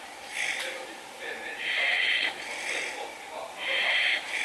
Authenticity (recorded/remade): recorded